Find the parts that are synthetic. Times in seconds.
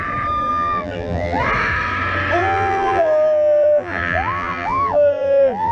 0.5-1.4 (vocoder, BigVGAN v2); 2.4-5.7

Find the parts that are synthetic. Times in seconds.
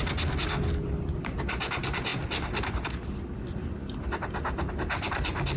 2.1-4.7 (vocoder, BigVGAN v2)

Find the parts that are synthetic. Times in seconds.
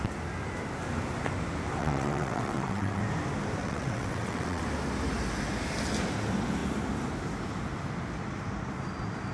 1.8-3.0 (vocoder, WaveNeXt); 3.6-4.6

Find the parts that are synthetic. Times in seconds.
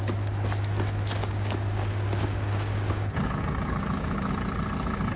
1.2-4.3 (codec, DAC)